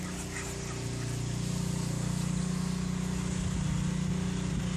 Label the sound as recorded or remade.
recorded